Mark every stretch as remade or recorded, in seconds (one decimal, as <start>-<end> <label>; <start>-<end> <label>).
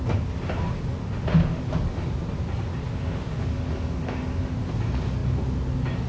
0.0-1.0 recorded; 1.0-1.6 remade; 1.6-2.9 recorded; 2.9-4.7 remade; 4.7-6.1 recorded